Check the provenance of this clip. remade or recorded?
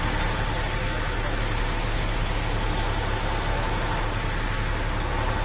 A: recorded